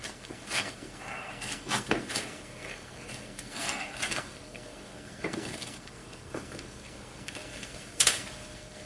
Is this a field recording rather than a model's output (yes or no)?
no